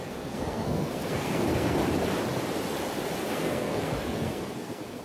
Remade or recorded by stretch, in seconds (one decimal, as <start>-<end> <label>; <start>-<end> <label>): 0.0-1.8 remade; 1.8-3.3 recorded; 3.3-5.0 remade